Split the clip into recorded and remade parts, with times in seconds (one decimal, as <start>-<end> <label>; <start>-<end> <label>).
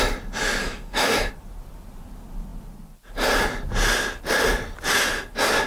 0.0-0.6 recorded; 0.6-1.3 remade; 1.3-5.7 recorded